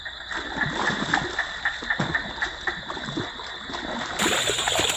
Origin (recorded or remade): recorded